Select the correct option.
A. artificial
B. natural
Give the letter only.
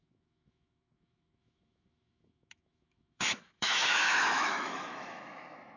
A